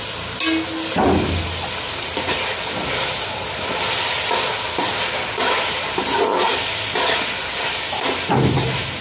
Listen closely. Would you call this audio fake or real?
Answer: real